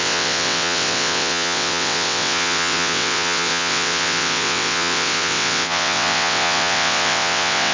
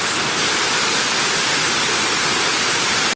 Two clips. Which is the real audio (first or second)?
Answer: second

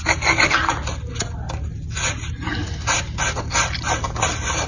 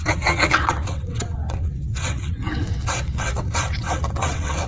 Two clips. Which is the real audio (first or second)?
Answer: first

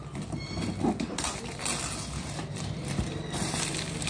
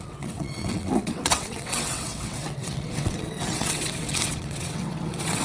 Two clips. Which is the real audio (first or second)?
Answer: first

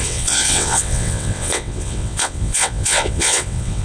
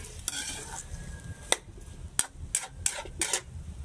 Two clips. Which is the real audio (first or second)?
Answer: second